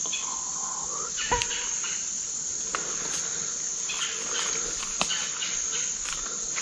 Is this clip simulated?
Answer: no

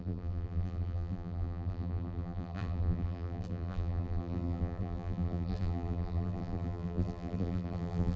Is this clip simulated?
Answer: yes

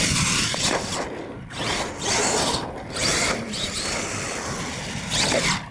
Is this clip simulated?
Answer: no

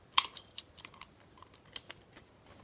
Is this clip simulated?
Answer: no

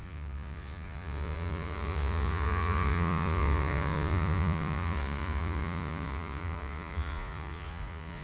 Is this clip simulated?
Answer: yes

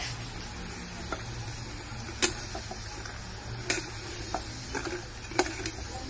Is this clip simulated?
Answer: no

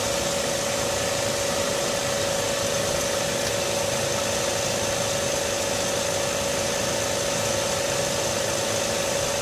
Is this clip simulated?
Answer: no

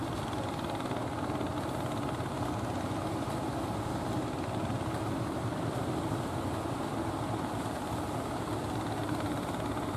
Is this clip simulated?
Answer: no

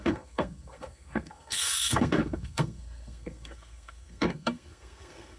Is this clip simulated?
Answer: yes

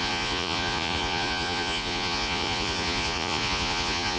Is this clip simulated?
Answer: yes